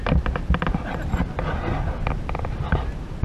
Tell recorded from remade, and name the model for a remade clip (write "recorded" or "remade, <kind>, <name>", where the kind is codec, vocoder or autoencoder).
recorded